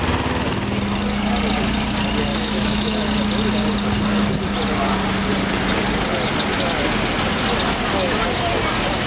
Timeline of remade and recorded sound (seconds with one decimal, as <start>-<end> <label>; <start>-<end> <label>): 0.0-2.3 recorded; 2.3-3.1 remade; 3.1-9.1 recorded